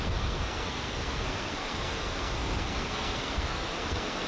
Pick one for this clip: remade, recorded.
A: remade